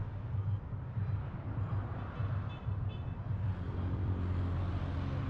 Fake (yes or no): no